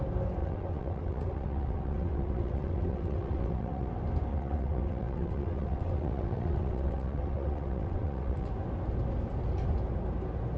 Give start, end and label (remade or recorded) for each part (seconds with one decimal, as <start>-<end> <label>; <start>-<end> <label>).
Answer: 0.0-0.4 recorded; 0.4-3.9 remade; 3.9-4.3 recorded; 4.3-8.5 remade; 8.5-10.6 recorded